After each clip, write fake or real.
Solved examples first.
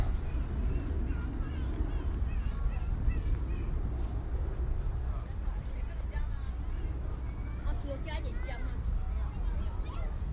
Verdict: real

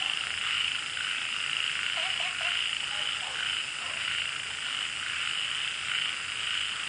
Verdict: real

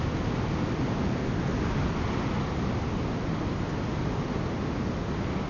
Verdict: real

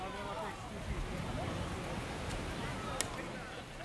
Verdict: real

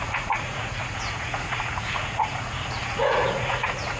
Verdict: fake